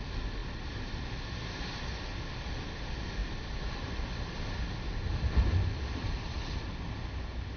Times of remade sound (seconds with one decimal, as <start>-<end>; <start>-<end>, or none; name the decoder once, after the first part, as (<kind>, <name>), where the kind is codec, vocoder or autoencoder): none